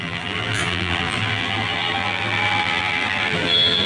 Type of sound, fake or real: fake